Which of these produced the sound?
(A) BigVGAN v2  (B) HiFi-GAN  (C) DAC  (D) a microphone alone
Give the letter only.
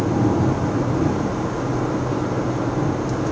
D